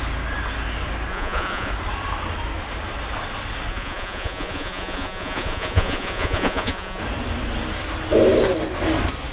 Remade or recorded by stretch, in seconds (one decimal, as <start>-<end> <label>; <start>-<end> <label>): 0.0-1.1 recorded; 1.1-1.7 remade; 1.7-3.7 recorded; 3.7-7.0 remade; 7.0-9.3 recorded

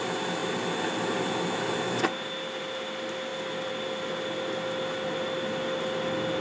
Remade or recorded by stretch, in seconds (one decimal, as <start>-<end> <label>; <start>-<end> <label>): 0.0-6.4 recorded